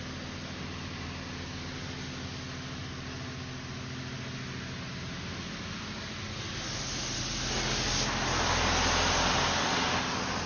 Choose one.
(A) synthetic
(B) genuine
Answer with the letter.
B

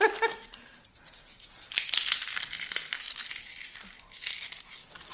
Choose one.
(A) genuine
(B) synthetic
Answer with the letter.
A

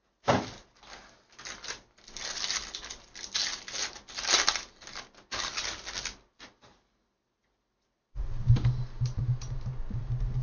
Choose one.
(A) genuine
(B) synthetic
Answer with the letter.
A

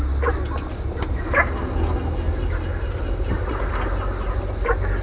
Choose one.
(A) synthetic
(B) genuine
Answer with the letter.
B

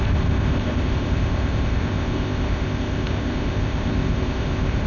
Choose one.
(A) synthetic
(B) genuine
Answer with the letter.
A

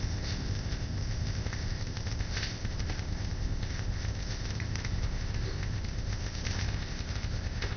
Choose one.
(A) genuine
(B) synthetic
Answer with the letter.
B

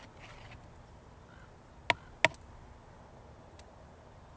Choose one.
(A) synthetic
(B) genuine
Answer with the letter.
B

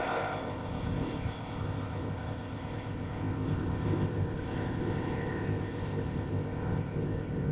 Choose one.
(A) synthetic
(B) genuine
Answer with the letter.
A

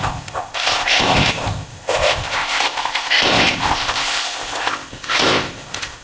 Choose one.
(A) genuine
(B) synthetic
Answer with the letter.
B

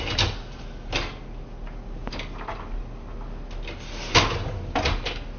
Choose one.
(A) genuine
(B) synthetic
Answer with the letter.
A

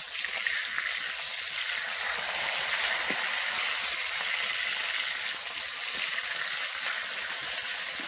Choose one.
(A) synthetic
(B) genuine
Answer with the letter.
B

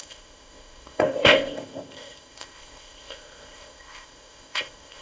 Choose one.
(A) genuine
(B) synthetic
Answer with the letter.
B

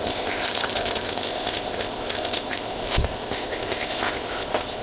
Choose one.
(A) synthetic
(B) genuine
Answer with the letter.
A